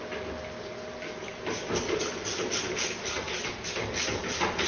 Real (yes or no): yes